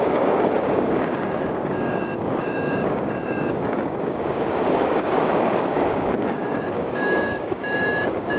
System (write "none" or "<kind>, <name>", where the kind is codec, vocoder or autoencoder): codec, DAC